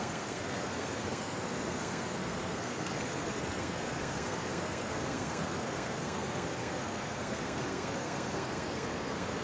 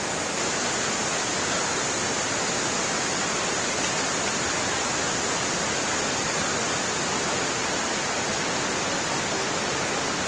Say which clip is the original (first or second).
second